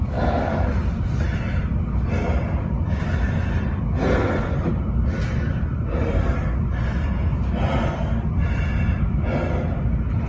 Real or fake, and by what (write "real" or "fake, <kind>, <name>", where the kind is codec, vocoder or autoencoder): real